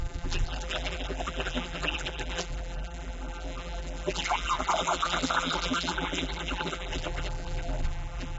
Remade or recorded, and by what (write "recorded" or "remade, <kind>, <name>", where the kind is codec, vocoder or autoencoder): remade, vocoder, BigVGAN v2